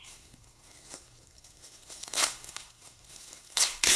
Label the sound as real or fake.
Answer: fake